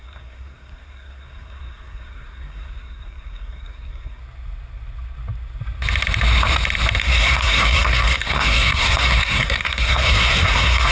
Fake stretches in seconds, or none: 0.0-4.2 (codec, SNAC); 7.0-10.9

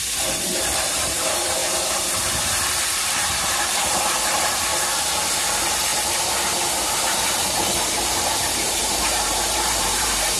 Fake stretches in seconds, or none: 0.0-1.6 (vocoder, BigVGAN v2); 2.7-4.7; 5.4-5.9; 6.9-10.4

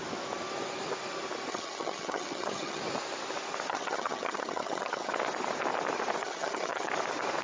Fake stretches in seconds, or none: 1.5-2.8 (vocoder, HiFi-GAN); 3.7-5.1; 6.2-6.9

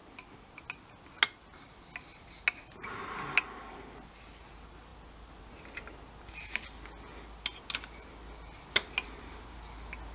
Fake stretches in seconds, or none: none

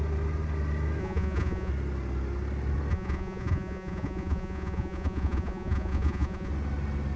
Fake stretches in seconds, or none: 1.0-1.7 (vocoder, Vocos); 2.9-6.5

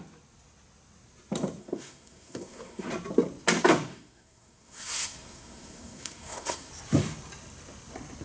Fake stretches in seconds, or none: 1.6-2.9 (codec, SNAC); 3.9-6.7

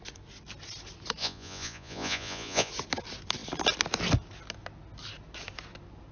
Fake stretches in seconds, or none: 1.2-2.7 (vocoder, Vocos)